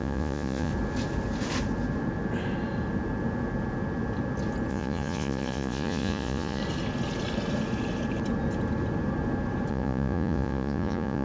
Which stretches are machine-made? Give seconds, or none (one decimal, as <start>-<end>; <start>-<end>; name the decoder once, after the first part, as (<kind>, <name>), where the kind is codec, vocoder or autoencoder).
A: 0.0-0.7 (vocoder, Vocos); 4.7-6.6; 9.7-11.2